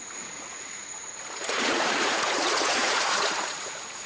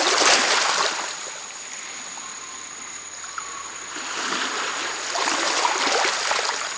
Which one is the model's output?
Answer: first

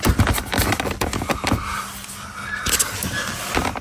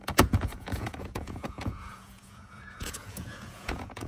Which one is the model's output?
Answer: second